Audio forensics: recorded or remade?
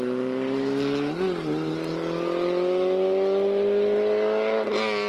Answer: recorded